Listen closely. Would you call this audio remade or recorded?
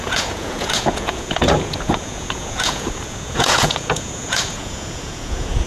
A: remade